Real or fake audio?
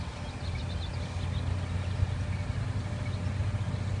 real